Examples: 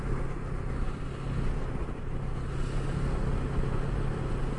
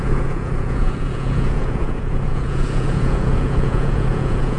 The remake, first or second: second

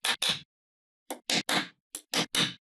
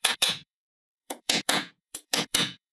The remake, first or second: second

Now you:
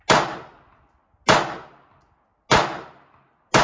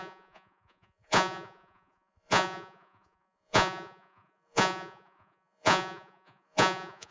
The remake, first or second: second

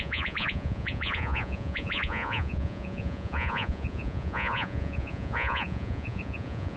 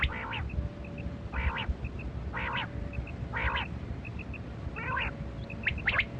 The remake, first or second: first